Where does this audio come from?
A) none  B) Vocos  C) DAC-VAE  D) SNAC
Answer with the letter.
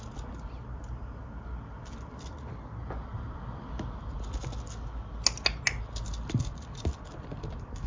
A